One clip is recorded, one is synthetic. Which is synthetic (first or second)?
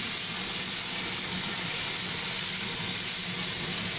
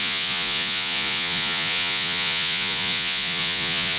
second